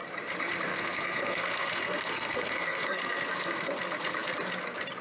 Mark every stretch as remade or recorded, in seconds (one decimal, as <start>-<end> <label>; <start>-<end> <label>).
0.0-0.7 recorded; 0.7-3.7 remade; 3.7-5.0 recorded